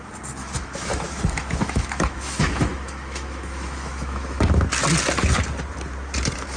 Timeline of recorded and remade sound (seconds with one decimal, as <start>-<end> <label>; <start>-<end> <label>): 0.0-0.4 recorded; 0.4-4.4 remade; 4.4-6.6 recorded